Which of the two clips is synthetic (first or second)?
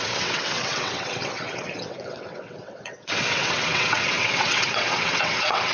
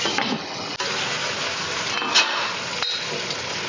first